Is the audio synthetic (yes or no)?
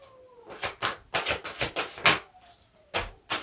no